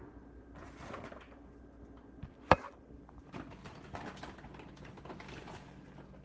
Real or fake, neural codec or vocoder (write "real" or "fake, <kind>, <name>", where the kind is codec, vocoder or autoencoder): real